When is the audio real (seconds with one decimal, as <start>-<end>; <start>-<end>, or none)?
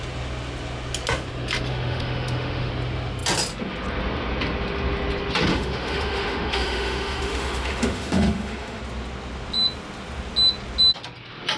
0.0-1.7; 2.7-5.5; 8.8-11.6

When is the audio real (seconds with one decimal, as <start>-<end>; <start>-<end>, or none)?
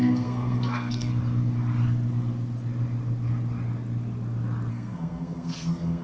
1.1-4.7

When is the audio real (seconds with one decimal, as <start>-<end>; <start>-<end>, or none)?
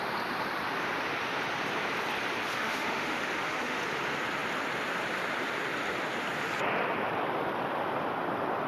0.0-2.5; 3.8-8.7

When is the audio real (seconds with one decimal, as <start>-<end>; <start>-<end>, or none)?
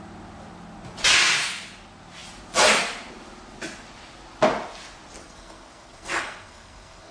0.0-5.2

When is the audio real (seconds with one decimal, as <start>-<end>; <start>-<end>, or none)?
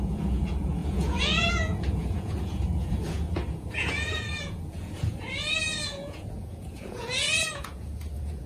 none